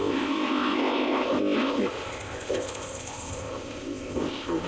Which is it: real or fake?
fake